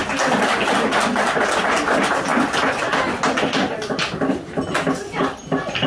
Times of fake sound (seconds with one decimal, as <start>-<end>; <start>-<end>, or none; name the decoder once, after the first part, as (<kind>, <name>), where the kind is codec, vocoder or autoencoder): none